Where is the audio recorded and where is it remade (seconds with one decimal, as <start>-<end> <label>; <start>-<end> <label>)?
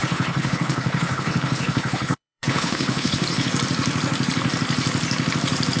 0.0-3.5 remade; 3.5-5.8 recorded